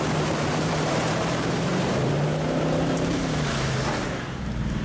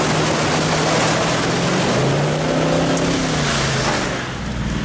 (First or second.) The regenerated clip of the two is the first